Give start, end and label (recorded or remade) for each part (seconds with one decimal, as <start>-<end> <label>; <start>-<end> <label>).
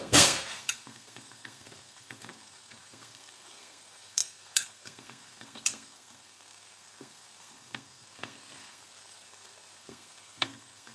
0.0-10.9 remade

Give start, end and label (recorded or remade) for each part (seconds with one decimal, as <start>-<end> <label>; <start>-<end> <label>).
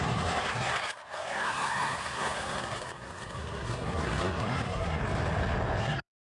0.0-5.0 remade; 5.0-5.8 recorded; 5.8-6.3 remade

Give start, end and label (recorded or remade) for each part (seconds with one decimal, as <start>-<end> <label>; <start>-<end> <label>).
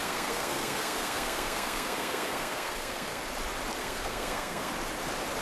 0.0-3.2 remade; 3.2-3.8 recorded; 3.8-4.7 remade; 4.7-5.4 recorded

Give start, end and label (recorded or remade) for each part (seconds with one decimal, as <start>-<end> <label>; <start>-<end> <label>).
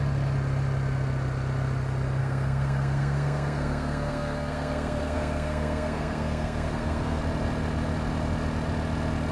0.0-2.2 recorded; 2.2-7.2 remade; 7.2-9.3 recorded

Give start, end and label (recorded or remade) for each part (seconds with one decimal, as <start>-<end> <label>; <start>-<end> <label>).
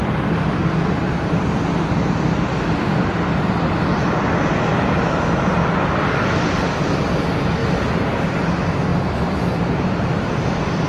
0.0-10.9 recorded